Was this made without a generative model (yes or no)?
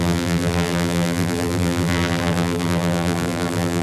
no